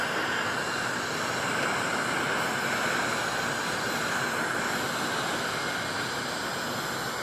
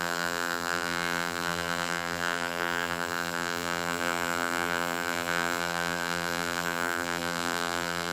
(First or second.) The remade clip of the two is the second